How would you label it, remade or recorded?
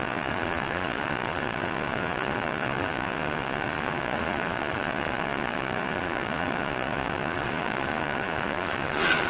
remade